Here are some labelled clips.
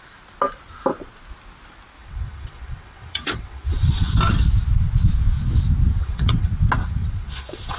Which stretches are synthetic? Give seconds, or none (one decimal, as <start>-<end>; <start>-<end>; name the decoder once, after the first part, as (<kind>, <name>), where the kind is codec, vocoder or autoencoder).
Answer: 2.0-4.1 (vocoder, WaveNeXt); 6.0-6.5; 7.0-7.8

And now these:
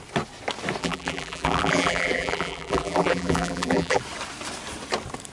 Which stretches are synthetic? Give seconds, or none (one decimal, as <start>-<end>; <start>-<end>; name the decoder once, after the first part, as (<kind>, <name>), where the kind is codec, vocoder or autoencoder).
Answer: 0.8-4.0 (vocoder, BigVGAN v2)

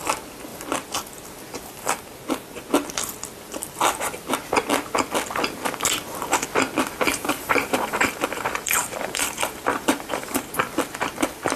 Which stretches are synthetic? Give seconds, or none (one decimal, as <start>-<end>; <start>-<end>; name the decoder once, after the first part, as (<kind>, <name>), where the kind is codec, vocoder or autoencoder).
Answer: 7.1-10.5 (vocoder, BigVGAN v2)